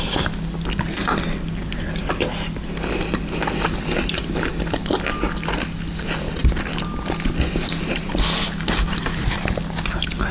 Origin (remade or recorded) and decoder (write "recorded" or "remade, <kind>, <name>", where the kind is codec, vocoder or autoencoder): recorded